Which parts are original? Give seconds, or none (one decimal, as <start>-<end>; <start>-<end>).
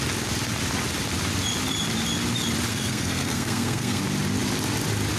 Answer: 0.0-2.7; 4.0-5.2